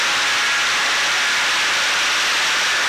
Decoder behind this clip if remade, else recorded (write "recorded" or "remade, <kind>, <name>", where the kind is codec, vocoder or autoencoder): recorded